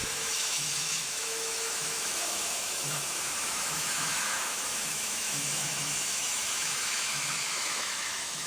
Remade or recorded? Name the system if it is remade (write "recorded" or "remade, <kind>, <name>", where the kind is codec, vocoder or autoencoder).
remade, autoencoder, DAC-VAE